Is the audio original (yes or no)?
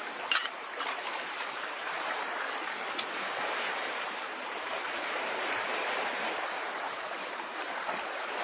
no